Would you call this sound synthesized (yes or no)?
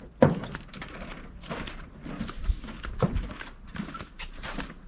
no